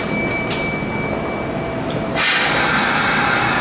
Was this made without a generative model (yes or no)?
yes